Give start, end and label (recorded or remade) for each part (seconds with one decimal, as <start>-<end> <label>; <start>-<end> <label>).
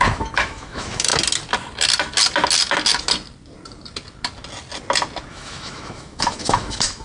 0.0-1.1 remade; 1.1-5.3 recorded; 5.3-7.0 remade